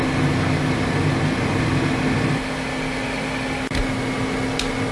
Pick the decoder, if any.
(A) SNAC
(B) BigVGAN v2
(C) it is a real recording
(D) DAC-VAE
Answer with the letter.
C